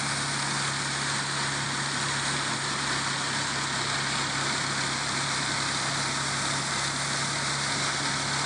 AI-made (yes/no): no